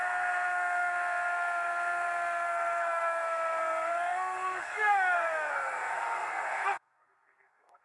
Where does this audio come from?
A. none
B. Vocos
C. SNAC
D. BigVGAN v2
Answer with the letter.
C